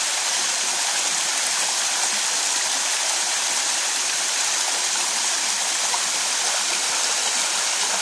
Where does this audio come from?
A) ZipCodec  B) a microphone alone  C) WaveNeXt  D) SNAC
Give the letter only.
B